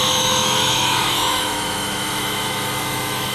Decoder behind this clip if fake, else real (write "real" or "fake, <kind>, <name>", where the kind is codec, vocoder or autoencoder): fake, autoencoder, DAC-VAE